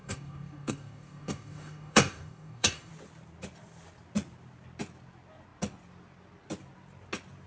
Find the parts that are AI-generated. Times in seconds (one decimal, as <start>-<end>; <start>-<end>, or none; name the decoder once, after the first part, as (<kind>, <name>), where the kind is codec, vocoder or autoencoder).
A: 0.0-2.9 (codec, DAC)